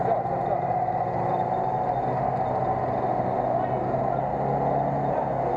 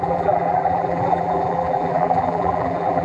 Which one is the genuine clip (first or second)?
first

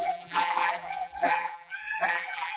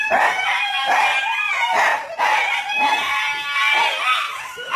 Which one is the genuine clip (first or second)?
second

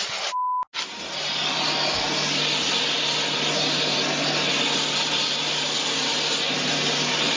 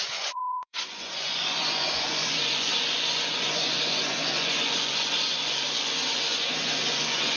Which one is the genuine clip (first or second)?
first